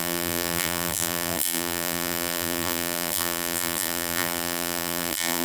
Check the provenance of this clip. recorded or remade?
remade